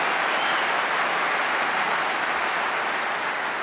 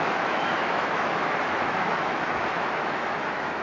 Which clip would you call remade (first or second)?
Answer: second